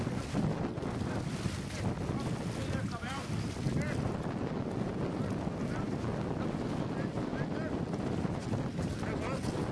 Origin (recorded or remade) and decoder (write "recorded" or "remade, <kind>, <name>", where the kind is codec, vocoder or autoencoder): recorded